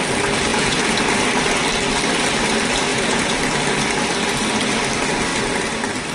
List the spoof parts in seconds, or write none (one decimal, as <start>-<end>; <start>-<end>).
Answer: 0.5-1.0; 2.9-3.4